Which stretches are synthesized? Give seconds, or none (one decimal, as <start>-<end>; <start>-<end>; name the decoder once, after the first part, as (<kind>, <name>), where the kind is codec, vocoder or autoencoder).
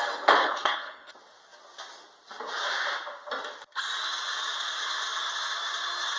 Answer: 0.4-1.1 (codec, HILCodec)